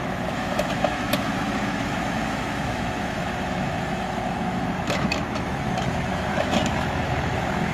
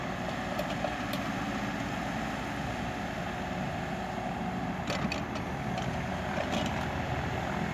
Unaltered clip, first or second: second